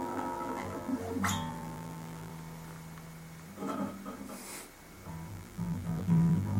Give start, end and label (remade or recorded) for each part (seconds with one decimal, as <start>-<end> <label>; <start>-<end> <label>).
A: 0.0-0.9 remade; 0.9-1.5 recorded; 1.5-2.3 remade; 2.3-5.3 recorded; 5.3-6.6 remade